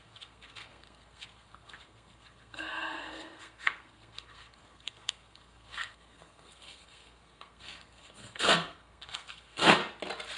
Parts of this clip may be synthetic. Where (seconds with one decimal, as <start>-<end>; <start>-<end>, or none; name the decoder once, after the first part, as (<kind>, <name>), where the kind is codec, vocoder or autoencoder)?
0.0-9.8 (codec, SNAC)